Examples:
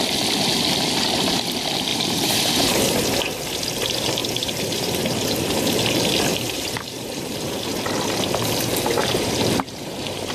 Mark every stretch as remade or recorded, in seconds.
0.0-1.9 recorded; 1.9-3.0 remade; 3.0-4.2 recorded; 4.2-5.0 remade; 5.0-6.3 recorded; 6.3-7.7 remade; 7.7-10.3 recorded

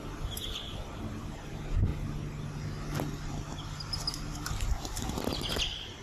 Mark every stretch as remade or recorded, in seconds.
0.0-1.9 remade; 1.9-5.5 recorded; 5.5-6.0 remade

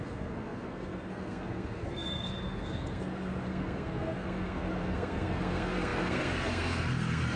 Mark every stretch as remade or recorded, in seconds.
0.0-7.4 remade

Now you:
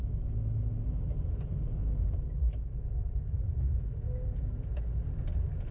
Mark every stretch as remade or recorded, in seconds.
0.0-1.8 recorded; 1.8-4.8 remade; 4.8-5.7 recorded

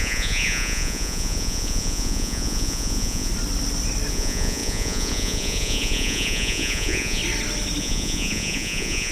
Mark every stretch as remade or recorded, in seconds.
0.0-3.3 remade; 3.3-4.1 recorded; 4.1-7.2 remade; 7.2-7.8 recorded; 7.8-9.1 remade

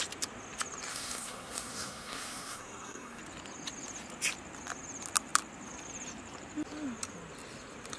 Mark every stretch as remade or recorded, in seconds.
0.0-0.9 recorded; 0.9-3.2 remade; 3.2-8.0 recorded